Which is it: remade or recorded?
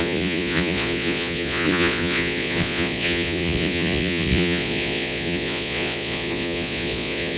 remade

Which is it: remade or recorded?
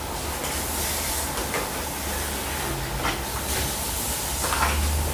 recorded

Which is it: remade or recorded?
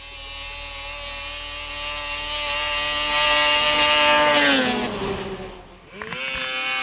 recorded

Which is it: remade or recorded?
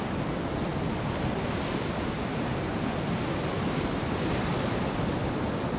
recorded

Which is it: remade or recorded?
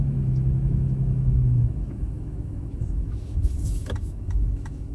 remade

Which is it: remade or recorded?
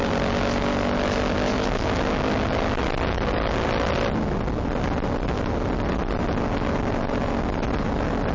recorded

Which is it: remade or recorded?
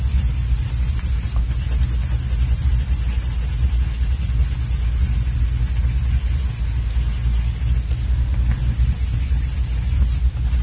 recorded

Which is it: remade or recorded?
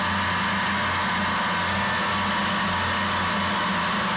recorded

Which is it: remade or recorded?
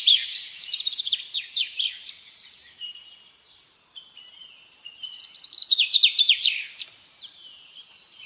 remade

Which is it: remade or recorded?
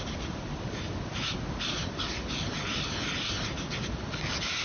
recorded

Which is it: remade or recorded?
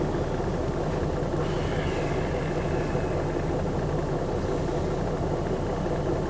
recorded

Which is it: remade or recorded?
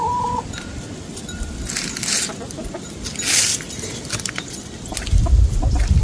recorded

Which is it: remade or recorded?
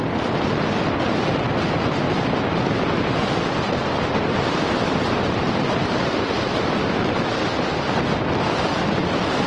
recorded